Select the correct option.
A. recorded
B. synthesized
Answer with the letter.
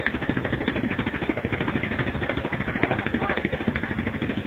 A